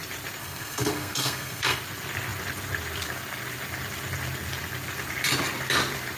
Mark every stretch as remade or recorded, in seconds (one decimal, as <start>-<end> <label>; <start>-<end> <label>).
0.0-0.4 recorded; 0.4-1.8 remade; 1.8-6.2 recorded